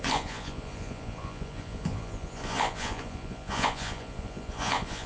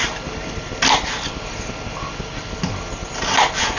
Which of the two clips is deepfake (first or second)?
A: first